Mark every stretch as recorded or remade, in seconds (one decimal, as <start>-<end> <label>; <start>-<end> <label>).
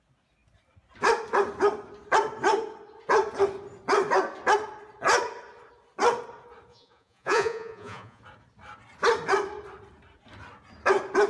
0.0-6.7 recorded; 6.7-8.2 remade; 8.2-11.3 recorded